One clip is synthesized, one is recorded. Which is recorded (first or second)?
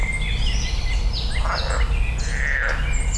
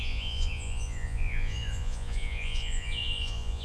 first